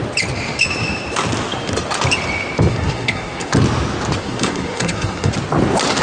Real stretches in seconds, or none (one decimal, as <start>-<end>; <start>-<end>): 0.0-2.7; 3.5-4.2; 5.3-6.0